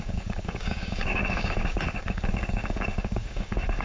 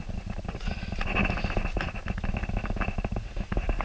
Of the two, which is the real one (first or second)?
second